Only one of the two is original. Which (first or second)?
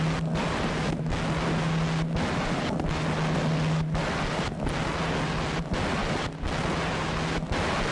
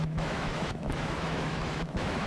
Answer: first